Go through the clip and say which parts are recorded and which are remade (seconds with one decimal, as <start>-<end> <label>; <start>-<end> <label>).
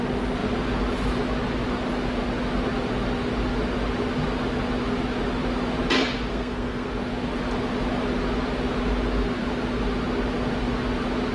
0.0-6.3 recorded; 6.3-6.9 remade; 6.9-11.3 recorded